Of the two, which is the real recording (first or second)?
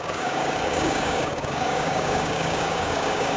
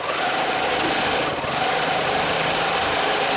second